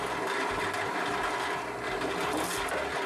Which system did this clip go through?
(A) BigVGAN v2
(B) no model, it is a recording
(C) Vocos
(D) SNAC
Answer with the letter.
B